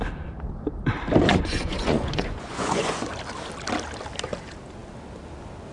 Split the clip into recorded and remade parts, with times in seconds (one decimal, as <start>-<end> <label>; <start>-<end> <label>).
0.0-1.3 recorded; 1.3-3.1 remade; 3.1-5.7 recorded